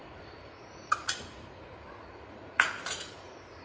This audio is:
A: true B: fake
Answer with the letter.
B